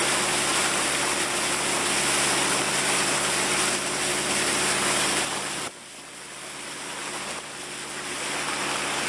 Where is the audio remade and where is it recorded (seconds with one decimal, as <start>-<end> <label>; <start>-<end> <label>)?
0.0-9.1 recorded